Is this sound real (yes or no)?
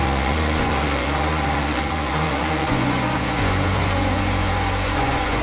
no